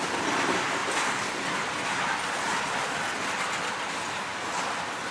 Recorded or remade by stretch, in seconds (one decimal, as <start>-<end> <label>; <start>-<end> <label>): 0.0-5.1 recorded